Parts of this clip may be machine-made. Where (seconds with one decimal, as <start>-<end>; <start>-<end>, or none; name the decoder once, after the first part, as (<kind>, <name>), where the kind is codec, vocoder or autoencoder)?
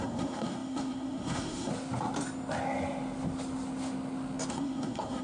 0.0-1.7 (codec, SNAC); 4.5-5.2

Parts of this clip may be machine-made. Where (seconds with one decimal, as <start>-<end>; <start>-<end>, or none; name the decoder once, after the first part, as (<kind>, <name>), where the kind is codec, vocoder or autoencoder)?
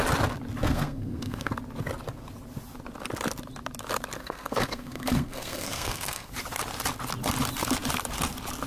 0.6-1.5 (codec, SNAC); 4.2-6.3